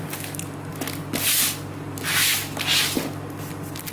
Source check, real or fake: real